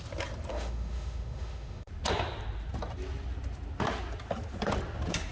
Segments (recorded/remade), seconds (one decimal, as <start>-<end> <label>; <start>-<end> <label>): 0.0-0.5 recorded; 0.5-1.9 remade; 1.9-5.3 recorded

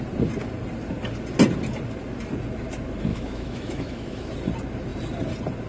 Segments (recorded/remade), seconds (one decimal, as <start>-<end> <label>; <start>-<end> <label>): 0.0-3.1 recorded; 3.1-4.3 remade; 4.3-5.7 recorded

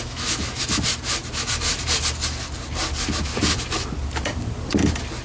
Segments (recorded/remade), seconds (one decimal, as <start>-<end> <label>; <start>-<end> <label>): 0.0-0.6 remade; 0.6-5.2 recorded

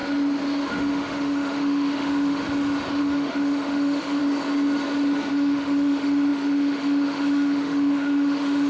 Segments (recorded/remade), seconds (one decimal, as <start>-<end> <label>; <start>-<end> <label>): 0.0-0.7 recorded; 0.7-2.4 remade; 2.4-3.0 recorded; 3.0-4.2 remade; 4.2-5.3 recorded; 5.3-8.7 remade